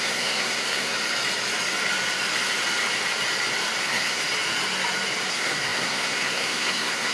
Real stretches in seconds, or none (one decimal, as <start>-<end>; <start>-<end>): 0.9-3.8; 4.2-5.3

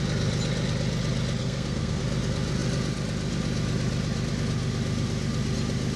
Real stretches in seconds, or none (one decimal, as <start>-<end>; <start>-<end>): 0.0-1.4; 2.0-6.0

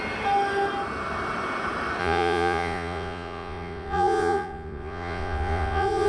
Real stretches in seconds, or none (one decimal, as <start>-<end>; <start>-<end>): 0.0-2.0

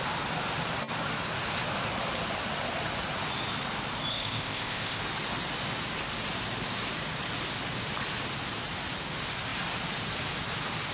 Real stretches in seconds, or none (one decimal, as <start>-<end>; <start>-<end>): 0.0-4.1; 5.0-10.9

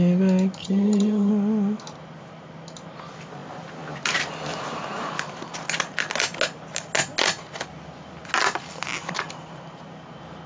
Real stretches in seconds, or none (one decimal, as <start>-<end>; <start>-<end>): 0.0-0.6; 1.3-10.5